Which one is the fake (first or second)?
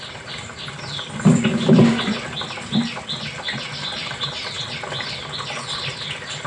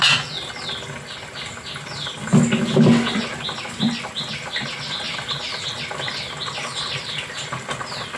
first